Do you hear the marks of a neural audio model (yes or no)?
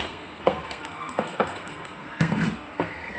yes